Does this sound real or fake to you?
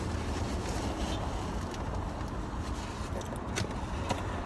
real